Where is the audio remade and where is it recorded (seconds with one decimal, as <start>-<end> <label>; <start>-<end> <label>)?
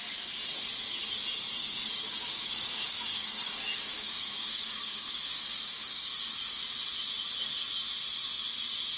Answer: 0.0-1.6 recorded; 1.6-6.1 remade; 6.1-9.0 recorded